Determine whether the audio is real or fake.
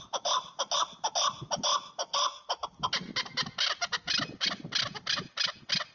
real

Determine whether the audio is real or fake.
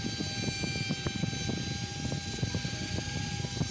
real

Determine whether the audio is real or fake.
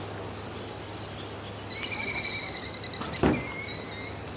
real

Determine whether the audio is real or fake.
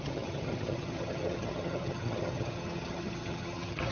fake